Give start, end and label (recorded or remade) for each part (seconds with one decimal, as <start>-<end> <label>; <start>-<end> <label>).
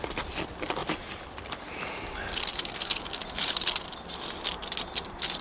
0.0-2.5 recorded; 2.5-3.2 remade; 3.2-5.4 recorded